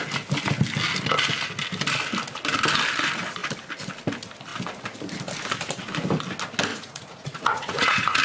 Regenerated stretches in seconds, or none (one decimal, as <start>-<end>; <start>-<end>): 6.7-8.2